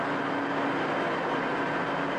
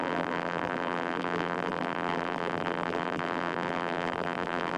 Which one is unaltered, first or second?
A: first